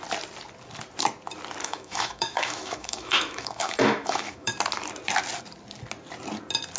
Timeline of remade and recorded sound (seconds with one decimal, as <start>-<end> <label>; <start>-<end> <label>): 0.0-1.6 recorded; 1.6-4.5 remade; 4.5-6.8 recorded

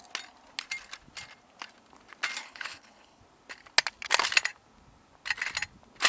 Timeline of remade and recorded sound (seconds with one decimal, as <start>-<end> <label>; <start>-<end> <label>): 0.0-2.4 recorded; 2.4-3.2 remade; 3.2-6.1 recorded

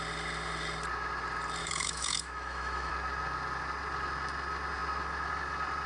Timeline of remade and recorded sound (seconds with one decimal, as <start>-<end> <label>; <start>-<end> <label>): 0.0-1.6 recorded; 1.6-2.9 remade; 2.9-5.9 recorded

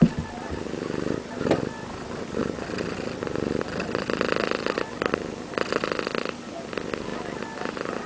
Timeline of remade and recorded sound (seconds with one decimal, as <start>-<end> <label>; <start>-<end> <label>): 0.0-8.1 recorded

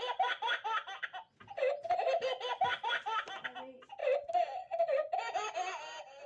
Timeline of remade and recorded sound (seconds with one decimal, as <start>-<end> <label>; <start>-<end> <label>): 0.0-6.3 recorded

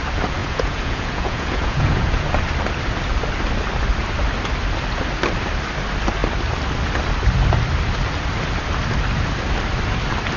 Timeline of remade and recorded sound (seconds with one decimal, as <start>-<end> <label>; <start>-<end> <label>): 0.0-0.4 recorded; 0.4-2.3 remade; 2.3-10.4 recorded

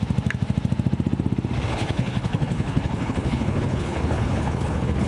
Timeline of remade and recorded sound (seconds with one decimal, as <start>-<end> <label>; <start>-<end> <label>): 0.0-1.7 recorded; 1.7-5.1 remade